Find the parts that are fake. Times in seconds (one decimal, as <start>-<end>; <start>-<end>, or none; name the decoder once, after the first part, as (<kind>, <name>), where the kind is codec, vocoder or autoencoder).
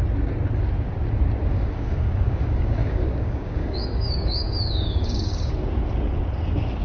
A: 1.5-5.5 (codec, DAC)